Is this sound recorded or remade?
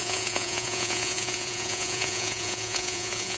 remade